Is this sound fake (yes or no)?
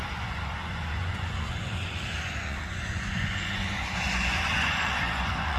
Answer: yes